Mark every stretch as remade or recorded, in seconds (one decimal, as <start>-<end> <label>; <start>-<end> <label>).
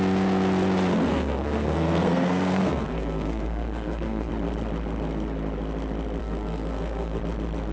0.0-1.1 recorded; 1.1-4.3 remade; 4.3-6.2 recorded; 6.2-7.2 remade; 7.2-7.7 recorded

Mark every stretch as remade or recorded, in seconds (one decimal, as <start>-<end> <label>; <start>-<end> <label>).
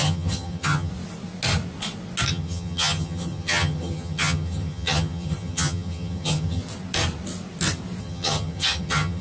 0.0-0.9 remade; 0.9-2.3 recorded; 2.3-6.6 remade; 6.6-8.0 recorded; 8.0-9.2 remade